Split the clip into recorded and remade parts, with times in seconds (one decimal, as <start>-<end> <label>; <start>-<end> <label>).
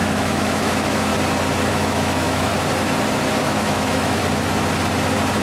0.0-1.1 remade; 1.1-1.7 recorded; 1.7-2.5 remade; 2.5-3.4 recorded; 3.4-4.2 remade; 4.2-5.4 recorded